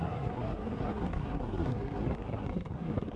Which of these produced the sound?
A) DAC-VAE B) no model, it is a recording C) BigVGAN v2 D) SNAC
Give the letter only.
D